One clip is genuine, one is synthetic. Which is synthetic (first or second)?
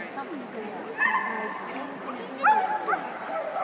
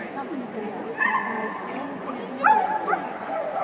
second